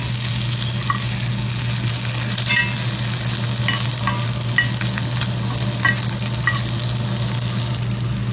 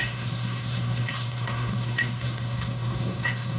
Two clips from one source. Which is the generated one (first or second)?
second